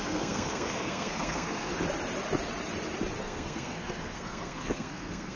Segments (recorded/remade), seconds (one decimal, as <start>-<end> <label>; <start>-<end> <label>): 0.0-1.7 remade; 1.7-3.2 recorded; 3.2-5.4 remade

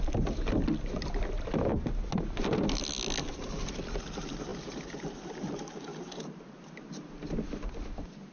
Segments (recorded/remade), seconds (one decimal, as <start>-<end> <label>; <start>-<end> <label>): 0.0-8.3 recorded

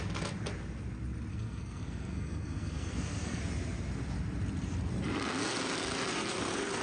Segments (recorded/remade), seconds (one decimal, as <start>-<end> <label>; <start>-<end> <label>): 0.0-1.3 recorded; 1.3-3.4 remade; 3.4-6.8 recorded

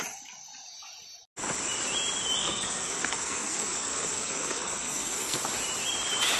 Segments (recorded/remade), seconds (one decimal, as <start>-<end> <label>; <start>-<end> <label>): 0.0-2.4 recorded; 2.4-5.4 remade; 5.4-6.4 recorded

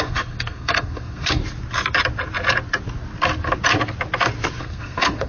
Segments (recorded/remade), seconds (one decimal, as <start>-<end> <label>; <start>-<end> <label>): 0.0-1.4 remade; 1.4-4.6 recorded; 4.6-5.3 remade